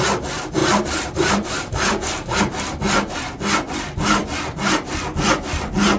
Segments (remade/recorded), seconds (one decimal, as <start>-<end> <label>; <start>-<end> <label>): 0.0-0.6 recorded; 0.6-2.4 remade; 2.4-6.0 recorded